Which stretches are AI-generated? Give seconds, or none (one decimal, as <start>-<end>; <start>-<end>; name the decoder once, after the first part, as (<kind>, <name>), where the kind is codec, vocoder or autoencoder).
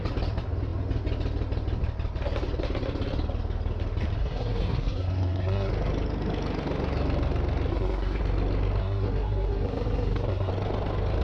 4.2-5.7 (codec, SNAC); 7.7-8.2; 8.8-10.5